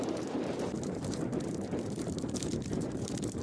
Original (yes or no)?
no